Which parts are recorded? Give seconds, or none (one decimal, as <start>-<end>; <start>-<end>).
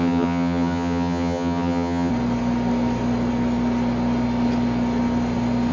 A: 2.1-5.7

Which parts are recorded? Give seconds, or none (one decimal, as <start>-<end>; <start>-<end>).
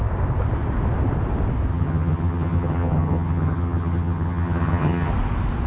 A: 0.0-1.7; 5.1-5.7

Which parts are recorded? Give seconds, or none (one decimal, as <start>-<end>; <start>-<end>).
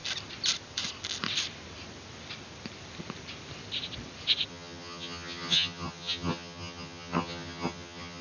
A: 0.0-4.5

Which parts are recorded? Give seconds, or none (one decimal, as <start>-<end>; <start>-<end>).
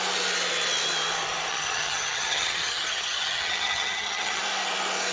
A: 0.0-1.5; 4.4-5.1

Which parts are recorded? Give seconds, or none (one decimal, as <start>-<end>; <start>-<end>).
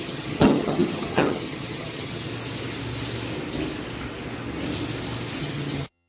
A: 2.3-5.4